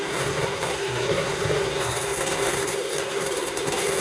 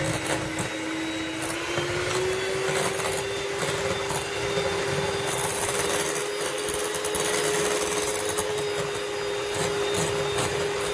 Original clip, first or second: second